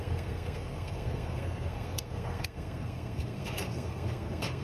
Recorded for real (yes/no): no